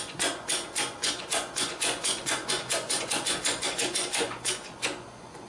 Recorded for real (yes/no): no